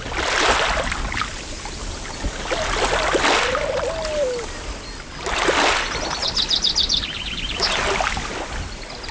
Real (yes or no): yes